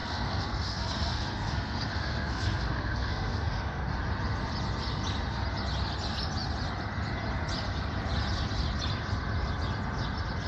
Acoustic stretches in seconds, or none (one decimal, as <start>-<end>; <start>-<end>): 3.9-10.5